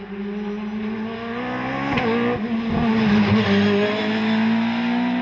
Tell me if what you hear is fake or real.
real